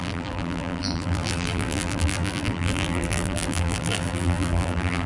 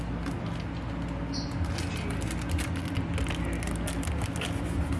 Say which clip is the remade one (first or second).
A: first